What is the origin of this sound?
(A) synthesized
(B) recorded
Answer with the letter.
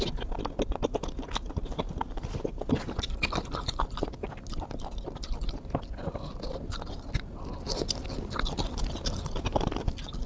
B